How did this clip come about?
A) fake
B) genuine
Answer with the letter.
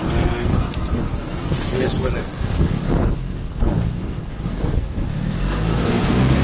A